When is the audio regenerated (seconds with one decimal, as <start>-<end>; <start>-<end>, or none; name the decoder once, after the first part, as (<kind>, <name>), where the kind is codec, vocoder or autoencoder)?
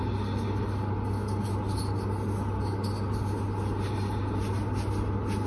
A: none